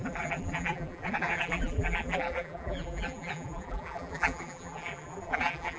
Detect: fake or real fake